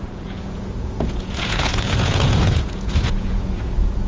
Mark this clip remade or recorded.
remade